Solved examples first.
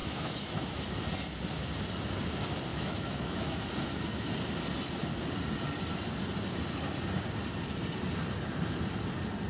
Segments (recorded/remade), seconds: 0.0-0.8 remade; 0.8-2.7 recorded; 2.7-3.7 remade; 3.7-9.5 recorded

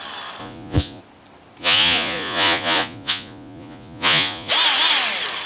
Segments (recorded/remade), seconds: 0.0-0.4 recorded; 0.4-1.0 remade; 1.0-1.6 recorded; 1.6-4.5 remade; 4.5-5.5 recorded

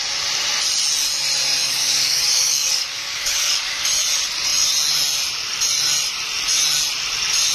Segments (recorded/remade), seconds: 0.0-1.6 recorded; 1.6-3.8 remade; 3.8-7.5 recorded

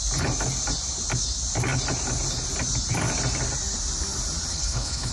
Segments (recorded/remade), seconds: 0.0-4.5 recorded; 4.5-5.1 remade

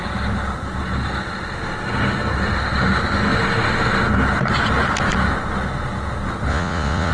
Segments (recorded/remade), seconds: 0.0-6.5 recorded; 6.5-7.1 remade